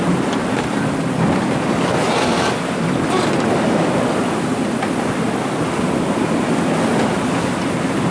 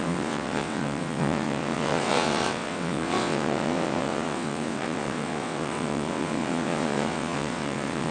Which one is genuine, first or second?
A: first